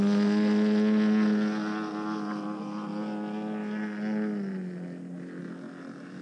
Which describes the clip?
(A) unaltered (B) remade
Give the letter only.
A